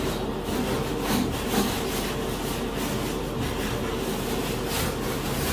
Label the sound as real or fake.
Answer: real